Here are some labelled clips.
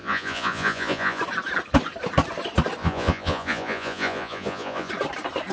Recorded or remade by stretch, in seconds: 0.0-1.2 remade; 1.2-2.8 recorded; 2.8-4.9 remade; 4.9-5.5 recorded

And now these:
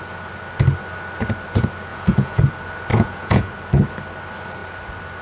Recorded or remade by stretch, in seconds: 0.0-1.9 recorded; 1.9-2.4 remade; 2.4-2.9 recorded; 2.9-3.5 remade; 3.5-5.2 recorded

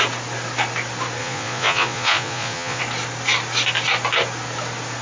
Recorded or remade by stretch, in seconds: 0.0-1.2 recorded; 1.2-2.8 remade; 2.8-5.0 recorded

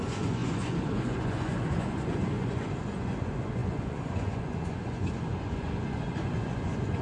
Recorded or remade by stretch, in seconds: 0.0-7.0 remade

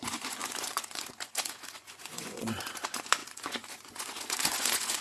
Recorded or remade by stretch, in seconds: 0.0-5.0 remade